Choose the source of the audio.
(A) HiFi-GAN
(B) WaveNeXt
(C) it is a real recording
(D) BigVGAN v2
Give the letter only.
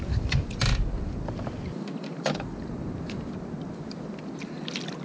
C